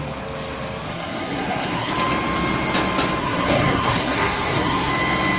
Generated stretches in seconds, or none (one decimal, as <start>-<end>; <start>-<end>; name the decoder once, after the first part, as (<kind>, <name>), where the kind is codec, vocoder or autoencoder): 0.9-1.9 (codec, SNAC); 3.2-4.9